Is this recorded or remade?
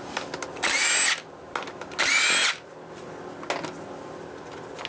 recorded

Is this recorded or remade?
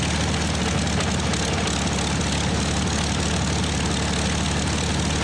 recorded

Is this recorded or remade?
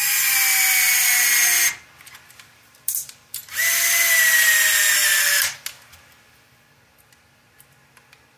recorded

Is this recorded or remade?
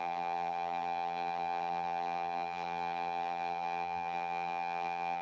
remade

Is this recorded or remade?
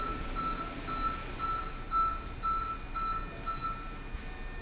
recorded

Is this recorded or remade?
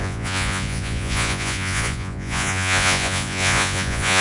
remade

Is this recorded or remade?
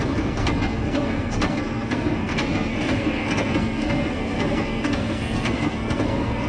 remade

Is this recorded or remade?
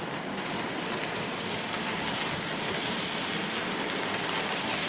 recorded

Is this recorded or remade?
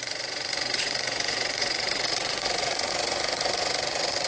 remade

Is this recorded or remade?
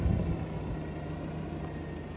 recorded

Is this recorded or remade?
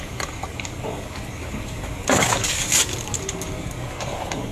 remade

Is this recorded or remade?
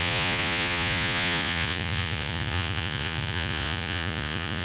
remade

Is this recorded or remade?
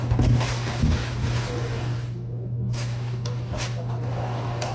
remade